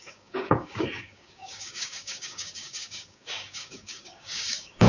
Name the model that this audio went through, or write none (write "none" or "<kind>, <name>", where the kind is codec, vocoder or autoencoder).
codec, DAC